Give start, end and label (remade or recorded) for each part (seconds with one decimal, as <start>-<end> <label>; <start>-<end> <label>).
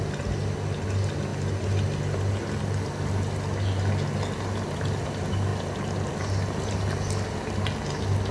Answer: 0.0-8.3 recorded